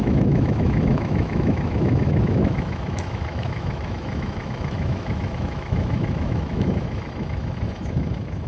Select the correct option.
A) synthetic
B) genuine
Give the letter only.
A